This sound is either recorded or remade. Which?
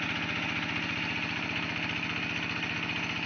recorded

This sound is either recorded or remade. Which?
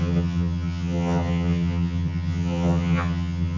remade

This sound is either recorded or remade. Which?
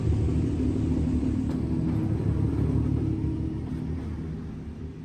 recorded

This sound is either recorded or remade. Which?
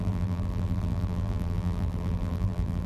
remade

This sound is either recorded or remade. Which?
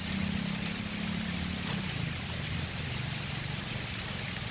recorded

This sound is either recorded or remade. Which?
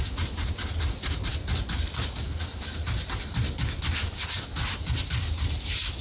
recorded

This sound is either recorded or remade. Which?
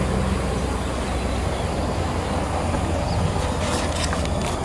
recorded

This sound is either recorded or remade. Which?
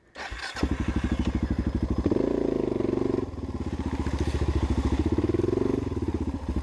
recorded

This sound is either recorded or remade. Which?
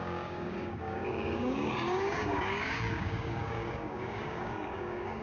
remade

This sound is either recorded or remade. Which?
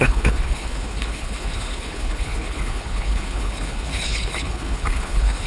remade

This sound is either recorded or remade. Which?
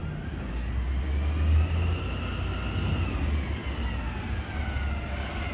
recorded